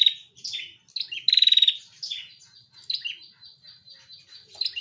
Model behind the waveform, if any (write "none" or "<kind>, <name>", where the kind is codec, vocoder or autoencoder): none